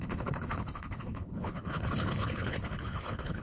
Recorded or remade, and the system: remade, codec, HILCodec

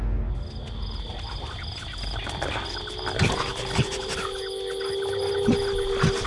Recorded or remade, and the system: recorded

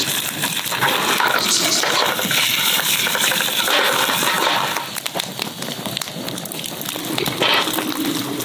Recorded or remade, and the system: recorded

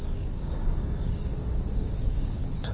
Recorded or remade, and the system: remade, codec, DAC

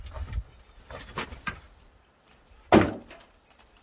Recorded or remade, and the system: recorded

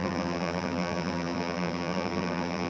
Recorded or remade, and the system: remade, vocoder, BigVGAN v2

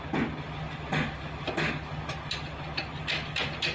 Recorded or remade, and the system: recorded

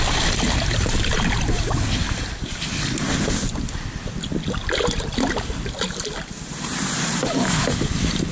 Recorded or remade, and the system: recorded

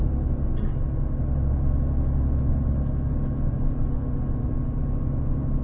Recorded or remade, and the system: recorded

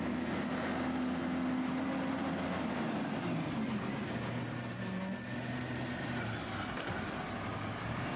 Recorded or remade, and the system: recorded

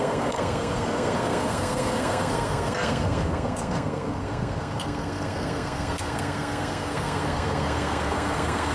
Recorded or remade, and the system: remade, codec, SNAC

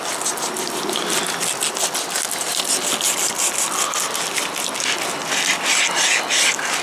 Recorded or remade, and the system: recorded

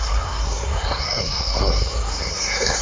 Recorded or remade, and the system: remade, codec, SNAC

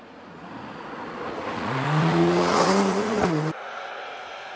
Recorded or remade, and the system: remade, vocoder, Vocos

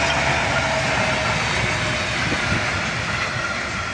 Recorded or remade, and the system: recorded